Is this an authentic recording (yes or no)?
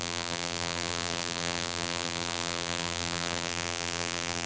no